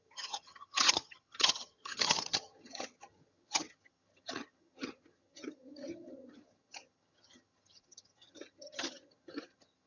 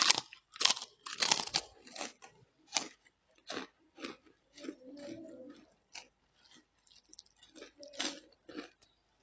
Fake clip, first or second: first